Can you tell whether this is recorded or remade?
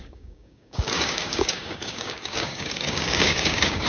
remade